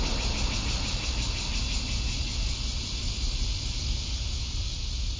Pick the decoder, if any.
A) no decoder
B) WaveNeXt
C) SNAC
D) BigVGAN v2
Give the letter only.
A